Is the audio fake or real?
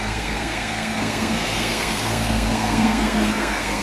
fake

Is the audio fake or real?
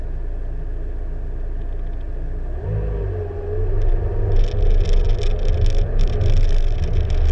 real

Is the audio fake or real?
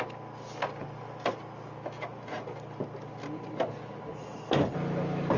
real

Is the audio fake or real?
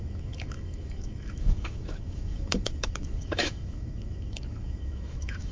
fake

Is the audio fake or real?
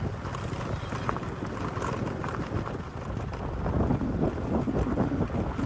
real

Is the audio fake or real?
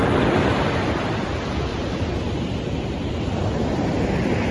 real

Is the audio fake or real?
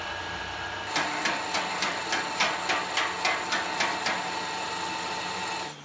real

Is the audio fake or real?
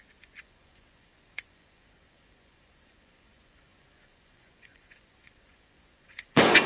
fake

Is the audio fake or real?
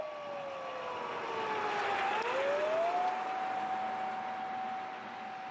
real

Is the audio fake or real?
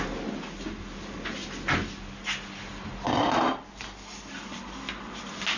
real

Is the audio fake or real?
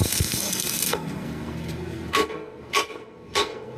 fake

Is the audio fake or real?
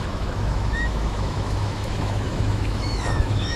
fake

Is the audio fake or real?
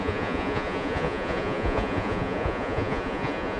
fake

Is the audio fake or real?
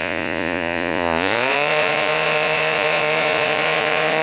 fake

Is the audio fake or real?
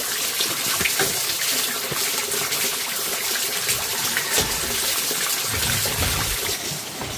fake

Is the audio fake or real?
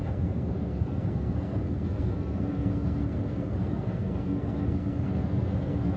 fake